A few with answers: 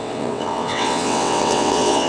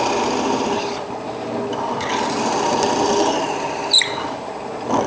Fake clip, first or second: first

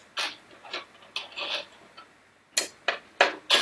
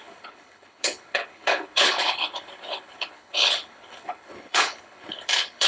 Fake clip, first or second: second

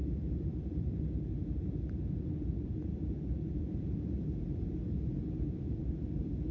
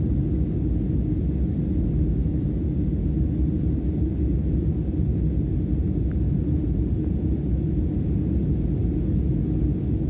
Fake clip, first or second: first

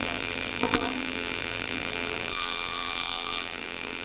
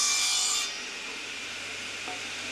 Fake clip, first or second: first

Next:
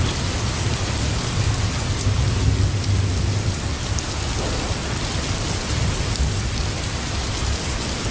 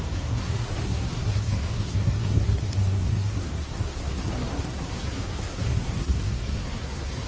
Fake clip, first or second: second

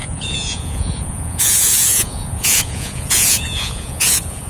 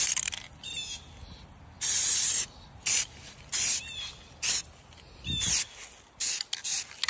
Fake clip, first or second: first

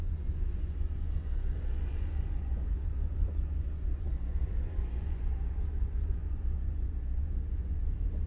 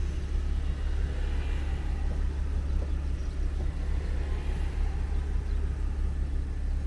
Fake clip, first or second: first